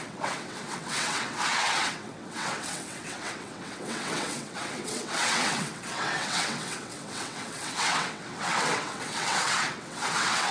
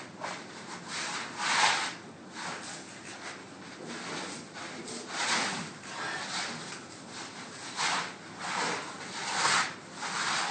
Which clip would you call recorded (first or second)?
second